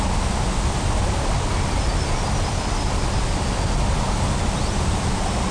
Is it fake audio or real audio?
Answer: real